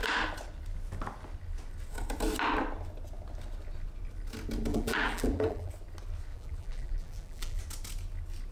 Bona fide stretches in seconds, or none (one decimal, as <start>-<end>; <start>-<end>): 0.0-4.7; 5.7-6.3; 7.6-8.5